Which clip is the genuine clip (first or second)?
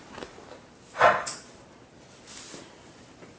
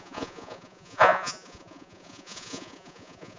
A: first